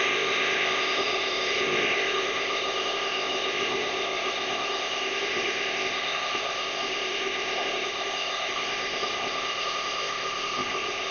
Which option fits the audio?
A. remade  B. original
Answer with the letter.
A